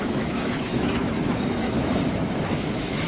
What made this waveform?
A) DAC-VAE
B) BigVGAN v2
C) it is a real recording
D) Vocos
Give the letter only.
A